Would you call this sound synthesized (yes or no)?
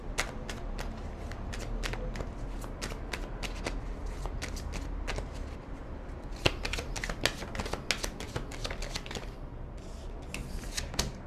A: no